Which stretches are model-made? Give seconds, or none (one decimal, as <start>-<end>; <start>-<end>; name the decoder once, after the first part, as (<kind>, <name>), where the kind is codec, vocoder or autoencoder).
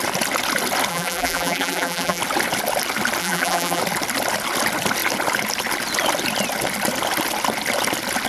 0.9-2.2 (vocoder, BigVGAN v2); 3.2-3.8